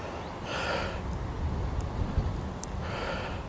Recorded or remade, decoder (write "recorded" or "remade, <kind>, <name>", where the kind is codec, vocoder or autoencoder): recorded